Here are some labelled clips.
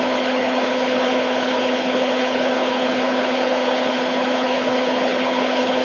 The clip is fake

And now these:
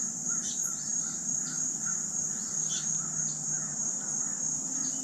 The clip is real